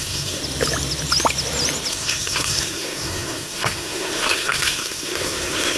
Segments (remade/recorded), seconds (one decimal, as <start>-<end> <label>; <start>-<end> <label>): 0.0-0.4 remade; 0.4-1.9 recorded; 1.9-5.8 remade

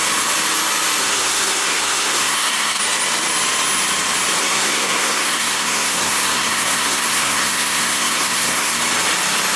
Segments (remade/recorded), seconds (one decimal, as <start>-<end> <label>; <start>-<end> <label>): 0.0-1.0 recorded; 1.0-2.8 remade; 2.8-4.4 recorded; 4.4-8.8 remade; 8.8-9.6 recorded

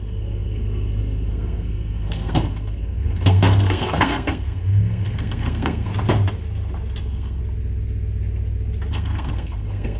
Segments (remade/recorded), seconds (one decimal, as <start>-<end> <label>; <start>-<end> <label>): 0.0-5.9 remade; 5.9-7.0 recorded; 7.0-7.4 remade; 7.4-8.9 recorded; 8.9-10.0 remade

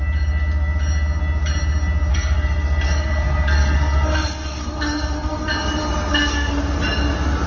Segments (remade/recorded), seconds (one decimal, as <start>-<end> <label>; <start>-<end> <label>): 0.0-2.1 recorded; 2.1-5.5 remade; 5.5-6.1 recorded; 6.1-6.6 remade; 6.6-7.5 recorded

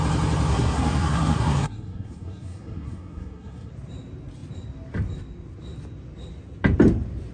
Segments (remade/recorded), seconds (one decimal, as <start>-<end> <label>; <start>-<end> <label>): 0.0-0.5 recorded; 0.5-3.7 remade; 3.7-7.3 recorded

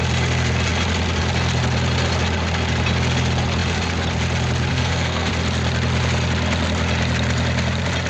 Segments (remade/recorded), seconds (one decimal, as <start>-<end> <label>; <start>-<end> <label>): 0.0-4.7 recorded; 4.7-5.3 remade; 5.3-8.1 recorded

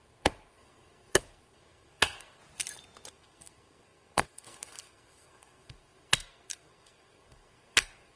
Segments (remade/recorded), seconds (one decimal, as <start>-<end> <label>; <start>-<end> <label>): 0.0-2.4 remade; 2.4-3.1 recorded; 3.1-8.2 remade

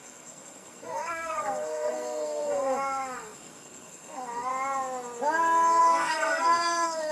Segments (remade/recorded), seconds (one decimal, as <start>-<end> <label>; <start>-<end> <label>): 0.0-4.5 remade; 4.5-5.8 recorded; 5.8-7.1 remade